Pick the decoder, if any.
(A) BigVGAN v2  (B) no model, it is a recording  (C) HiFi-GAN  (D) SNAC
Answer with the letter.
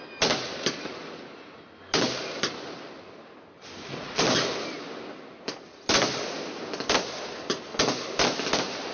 B